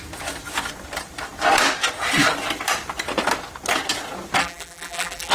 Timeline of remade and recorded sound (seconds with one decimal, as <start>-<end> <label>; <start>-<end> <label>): 0.0-4.4 recorded; 4.4-5.3 remade